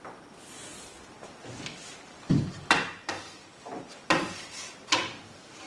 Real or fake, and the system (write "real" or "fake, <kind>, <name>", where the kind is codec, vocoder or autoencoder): real